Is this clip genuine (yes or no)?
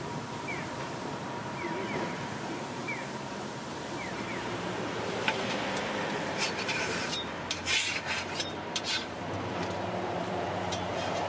no